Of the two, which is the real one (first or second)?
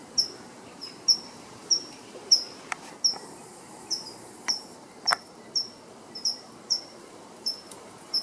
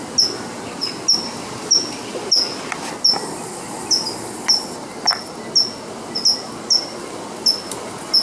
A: second